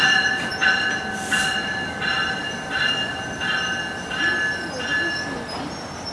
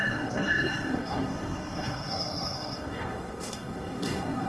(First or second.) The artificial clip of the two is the second